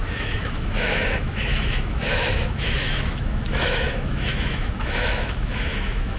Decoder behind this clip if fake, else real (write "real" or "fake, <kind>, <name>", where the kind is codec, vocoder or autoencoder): fake, autoencoder, DAC-VAE